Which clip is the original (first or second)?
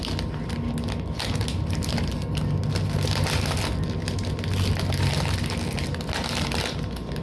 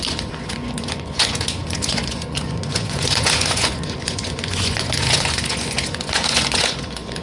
first